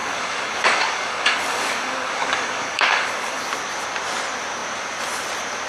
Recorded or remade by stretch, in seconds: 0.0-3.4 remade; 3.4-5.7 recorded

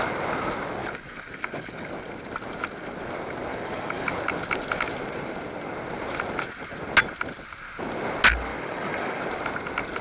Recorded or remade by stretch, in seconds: 0.0-0.8 recorded; 0.8-1.9 remade; 1.9-3.5 recorded; 3.5-4.1 remade; 4.1-8.5 recorded; 8.5-9.2 remade; 9.2-10.0 recorded

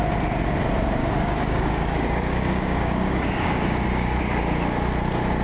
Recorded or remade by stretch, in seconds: 0.0-1.0 recorded; 1.0-4.2 remade; 4.2-5.4 recorded